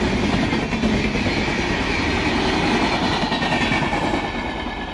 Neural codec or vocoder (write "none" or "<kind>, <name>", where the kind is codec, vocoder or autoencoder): none